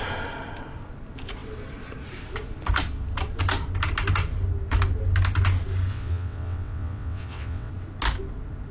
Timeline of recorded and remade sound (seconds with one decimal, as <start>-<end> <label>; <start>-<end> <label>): 0.0-5.9 recorded; 5.9-7.7 remade; 7.7-8.7 recorded